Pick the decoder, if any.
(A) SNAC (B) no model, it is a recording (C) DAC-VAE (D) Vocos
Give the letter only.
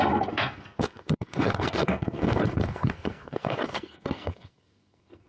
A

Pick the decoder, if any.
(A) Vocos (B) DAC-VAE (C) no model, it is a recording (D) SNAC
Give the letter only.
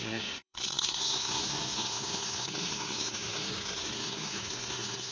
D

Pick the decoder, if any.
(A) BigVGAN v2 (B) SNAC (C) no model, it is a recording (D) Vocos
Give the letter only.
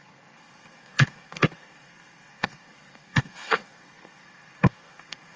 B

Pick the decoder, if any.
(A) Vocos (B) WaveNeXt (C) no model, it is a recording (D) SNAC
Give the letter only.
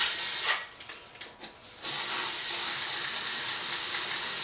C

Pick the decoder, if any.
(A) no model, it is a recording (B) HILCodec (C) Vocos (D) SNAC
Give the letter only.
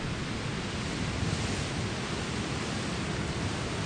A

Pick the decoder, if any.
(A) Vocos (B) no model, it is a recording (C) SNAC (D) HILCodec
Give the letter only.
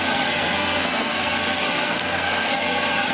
C